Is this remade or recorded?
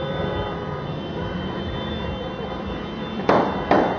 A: remade